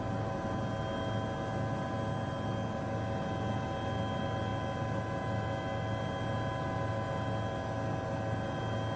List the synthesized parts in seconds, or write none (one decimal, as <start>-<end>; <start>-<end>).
none

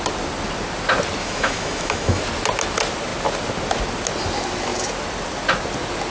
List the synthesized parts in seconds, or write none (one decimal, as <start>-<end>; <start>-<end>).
1.2-2.2

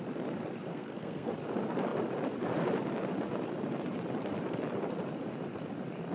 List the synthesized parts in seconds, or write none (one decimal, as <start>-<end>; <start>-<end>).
0.7-1.3

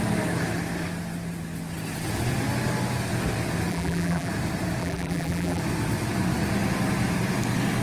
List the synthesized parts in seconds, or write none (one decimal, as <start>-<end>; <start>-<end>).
3.7-4.3; 4.8-5.6

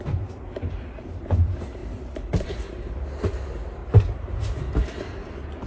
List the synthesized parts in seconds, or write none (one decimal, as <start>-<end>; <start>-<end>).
0.0-3.8; 5.0-5.7

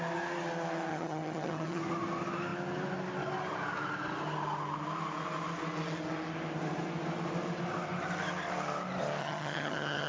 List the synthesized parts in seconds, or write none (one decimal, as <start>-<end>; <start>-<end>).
0.9-1.8; 9.2-10.1

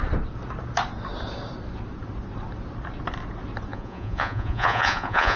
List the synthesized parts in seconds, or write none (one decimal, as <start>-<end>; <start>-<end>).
3.7-5.4

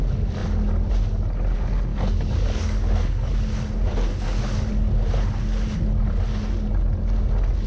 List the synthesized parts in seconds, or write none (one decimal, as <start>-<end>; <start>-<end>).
1.9-3.3